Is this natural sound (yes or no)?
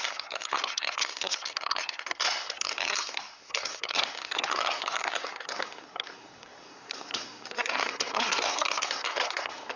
no